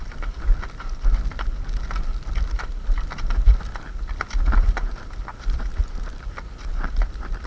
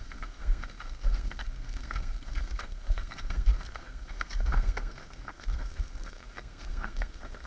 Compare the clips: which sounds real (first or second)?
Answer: first